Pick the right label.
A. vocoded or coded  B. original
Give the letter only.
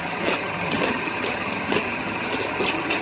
A